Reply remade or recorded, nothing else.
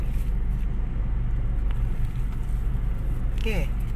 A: recorded